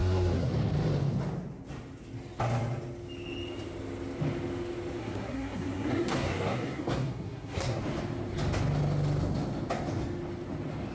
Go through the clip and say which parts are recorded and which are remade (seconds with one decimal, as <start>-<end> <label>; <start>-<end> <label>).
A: 0.0-0.5 remade; 0.5-5.0 recorded; 5.0-7.8 remade; 7.8-10.9 recorded

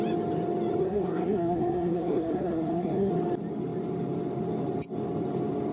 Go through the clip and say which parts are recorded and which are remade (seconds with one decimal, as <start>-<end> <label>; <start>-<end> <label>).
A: 0.0-0.8 recorded; 0.8-3.1 remade; 3.1-5.7 recorded